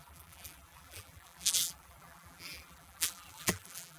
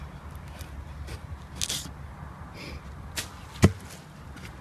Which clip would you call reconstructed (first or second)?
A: first